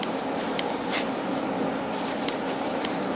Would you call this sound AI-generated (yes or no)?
no